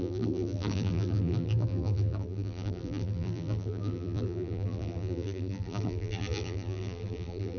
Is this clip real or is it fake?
fake